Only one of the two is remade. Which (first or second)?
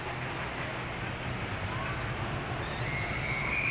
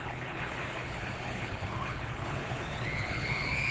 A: second